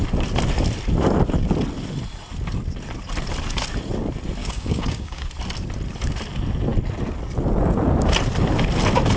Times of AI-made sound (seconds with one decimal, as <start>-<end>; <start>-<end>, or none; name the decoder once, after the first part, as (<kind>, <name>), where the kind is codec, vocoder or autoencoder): 4.4-5.3 (codec, DAC)